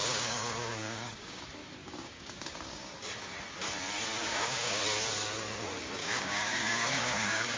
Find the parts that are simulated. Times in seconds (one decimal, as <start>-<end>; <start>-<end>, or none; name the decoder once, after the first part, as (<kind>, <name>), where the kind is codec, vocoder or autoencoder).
0.0-1.4 (codec, DAC); 1.8-2.9; 4.2-4.8; 6.0-7.6